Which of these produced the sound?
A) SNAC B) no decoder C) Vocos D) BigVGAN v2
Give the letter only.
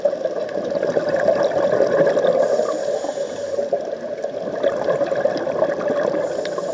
B